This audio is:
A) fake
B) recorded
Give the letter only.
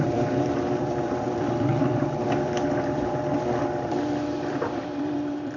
A